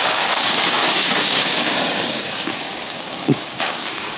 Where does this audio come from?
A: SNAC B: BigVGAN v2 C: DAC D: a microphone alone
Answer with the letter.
C